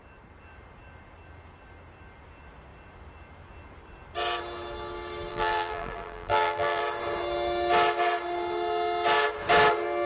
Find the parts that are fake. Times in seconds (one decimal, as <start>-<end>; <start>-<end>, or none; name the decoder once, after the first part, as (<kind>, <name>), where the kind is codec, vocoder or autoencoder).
5.3-6.8 (vocoder, BigVGAN v2)